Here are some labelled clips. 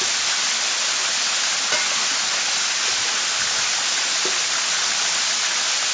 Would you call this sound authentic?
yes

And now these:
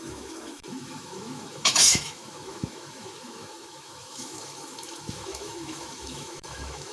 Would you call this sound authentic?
no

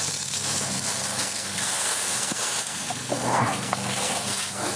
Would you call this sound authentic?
no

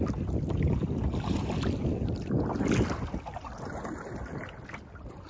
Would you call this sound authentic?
yes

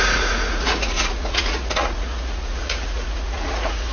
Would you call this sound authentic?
no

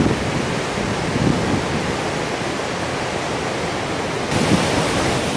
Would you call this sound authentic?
yes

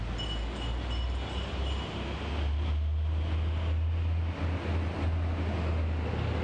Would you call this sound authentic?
yes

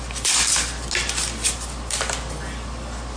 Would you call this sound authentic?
yes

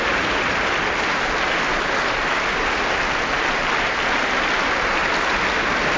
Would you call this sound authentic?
yes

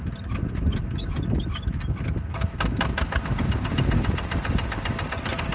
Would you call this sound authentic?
yes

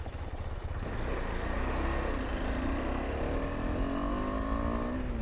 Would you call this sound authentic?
yes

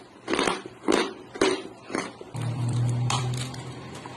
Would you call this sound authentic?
no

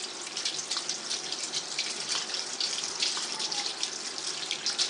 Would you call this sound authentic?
yes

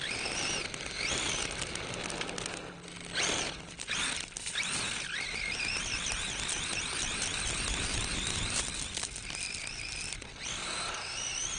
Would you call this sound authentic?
yes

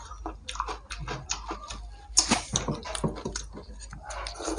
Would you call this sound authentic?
yes